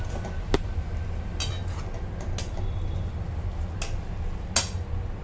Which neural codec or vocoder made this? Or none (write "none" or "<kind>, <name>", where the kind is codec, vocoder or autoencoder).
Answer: none